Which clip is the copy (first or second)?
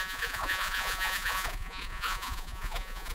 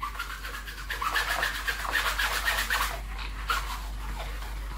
first